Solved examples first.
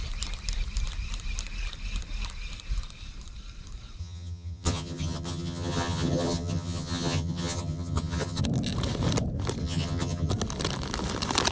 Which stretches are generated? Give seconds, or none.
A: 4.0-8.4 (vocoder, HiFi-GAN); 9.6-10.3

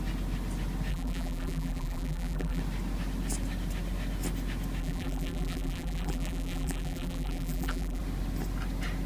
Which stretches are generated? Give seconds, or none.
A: 0.9-2.6 (vocoder, BigVGAN v2); 4.8-8.0

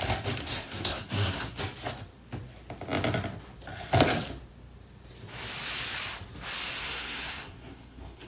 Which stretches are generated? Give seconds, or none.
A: 0.4-1.6 (codec, SNAC); 6.8-8.3